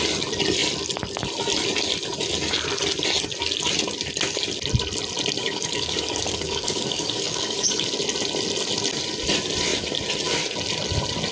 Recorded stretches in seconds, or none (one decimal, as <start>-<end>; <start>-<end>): 0.0-5.4; 7.9-11.3